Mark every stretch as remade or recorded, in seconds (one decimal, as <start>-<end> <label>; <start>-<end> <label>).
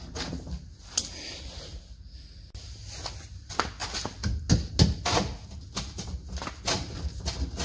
0.0-7.6 recorded